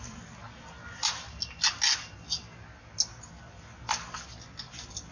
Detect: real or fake real